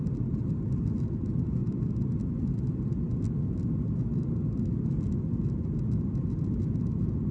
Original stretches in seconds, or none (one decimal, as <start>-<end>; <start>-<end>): 0.0-7.3